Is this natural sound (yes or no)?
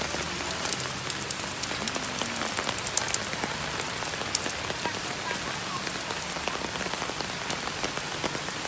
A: yes